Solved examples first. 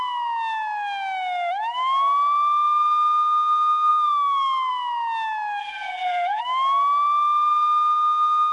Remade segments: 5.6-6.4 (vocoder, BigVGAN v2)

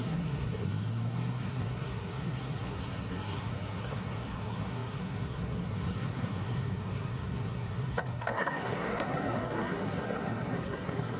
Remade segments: 0.0-11.2 (codec, SNAC)

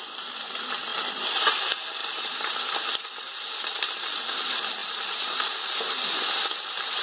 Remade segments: 0.9-1.5 (vocoder, BigVGAN v2); 2.0-2.8; 4.8-5.5